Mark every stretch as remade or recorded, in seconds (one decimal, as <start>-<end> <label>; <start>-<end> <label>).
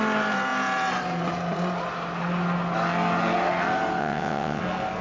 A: 0.0-4.0 recorded; 4.0-4.6 remade; 4.6-5.0 recorded